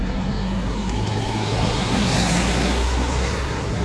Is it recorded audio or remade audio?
remade